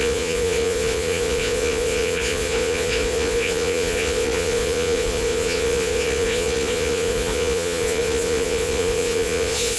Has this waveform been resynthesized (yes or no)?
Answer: yes